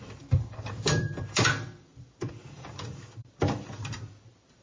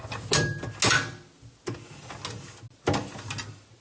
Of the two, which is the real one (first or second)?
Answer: second